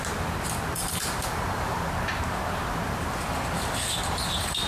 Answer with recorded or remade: recorded